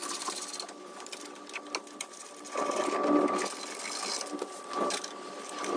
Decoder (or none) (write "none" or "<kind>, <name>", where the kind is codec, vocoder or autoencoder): none